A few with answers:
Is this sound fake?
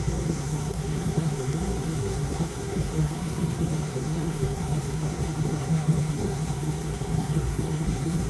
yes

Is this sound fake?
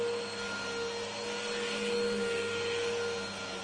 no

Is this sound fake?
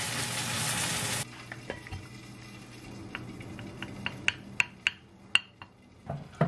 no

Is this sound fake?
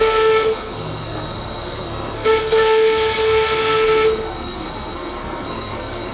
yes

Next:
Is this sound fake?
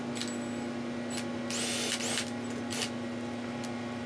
no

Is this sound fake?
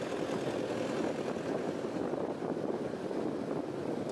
no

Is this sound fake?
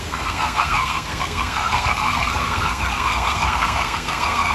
yes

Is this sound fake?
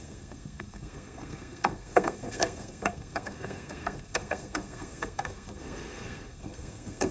yes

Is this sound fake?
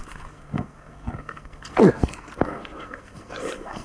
yes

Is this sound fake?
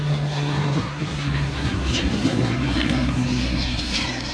yes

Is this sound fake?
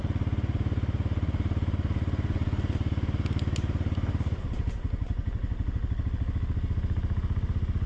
no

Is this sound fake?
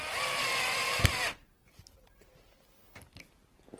no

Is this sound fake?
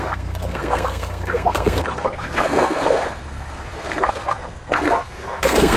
yes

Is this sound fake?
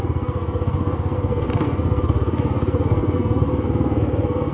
yes